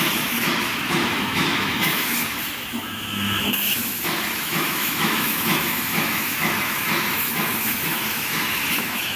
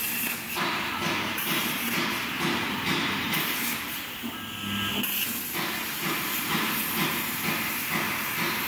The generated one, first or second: first